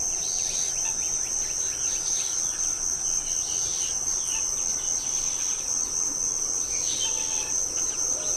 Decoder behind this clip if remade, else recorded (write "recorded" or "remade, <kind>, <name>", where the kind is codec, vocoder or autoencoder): recorded